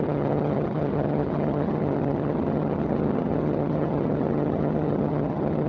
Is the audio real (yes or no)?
no